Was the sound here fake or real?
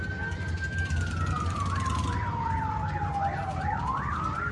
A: real